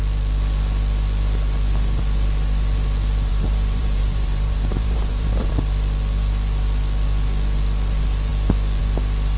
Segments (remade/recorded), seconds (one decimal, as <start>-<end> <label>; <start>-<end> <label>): 0.0-3.3 recorded; 3.3-5.5 remade; 5.5-9.4 recorded